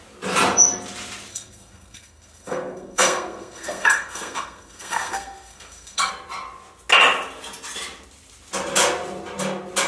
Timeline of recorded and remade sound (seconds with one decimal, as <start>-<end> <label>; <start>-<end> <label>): 0.0-1.3 recorded; 1.3-6.1 remade; 6.1-9.9 recorded